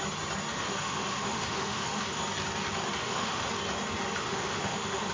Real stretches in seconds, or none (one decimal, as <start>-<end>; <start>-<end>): 0.0-0.5; 2.2-3.0; 3.5-4.2